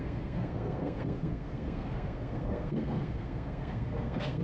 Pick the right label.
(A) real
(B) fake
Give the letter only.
B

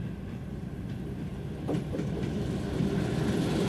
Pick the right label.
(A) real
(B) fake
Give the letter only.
B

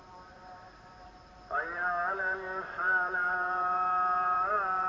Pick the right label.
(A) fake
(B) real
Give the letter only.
A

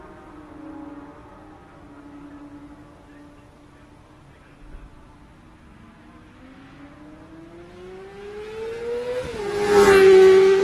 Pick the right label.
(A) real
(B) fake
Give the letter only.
A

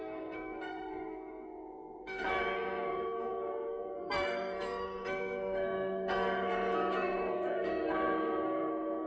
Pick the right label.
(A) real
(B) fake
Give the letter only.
B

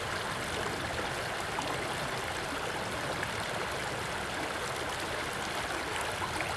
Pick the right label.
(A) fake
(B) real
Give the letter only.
B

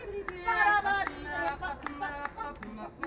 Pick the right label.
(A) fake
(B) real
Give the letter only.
B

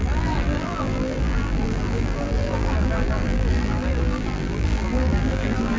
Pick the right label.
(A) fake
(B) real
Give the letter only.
A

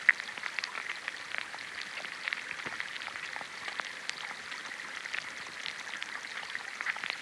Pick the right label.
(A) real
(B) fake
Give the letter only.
A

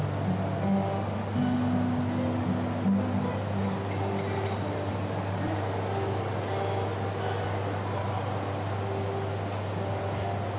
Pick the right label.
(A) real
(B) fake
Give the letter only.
A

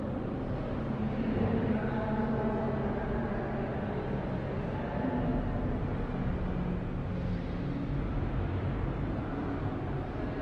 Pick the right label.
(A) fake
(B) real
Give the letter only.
B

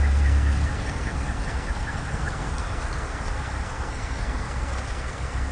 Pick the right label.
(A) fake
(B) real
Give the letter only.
A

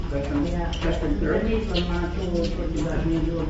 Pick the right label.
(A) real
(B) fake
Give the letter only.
A